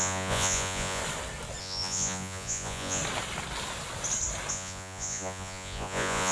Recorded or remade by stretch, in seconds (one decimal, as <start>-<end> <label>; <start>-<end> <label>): 0.0-1.0 remade; 1.0-1.6 recorded; 1.6-3.0 remade; 3.0-4.5 recorded; 4.5-6.3 remade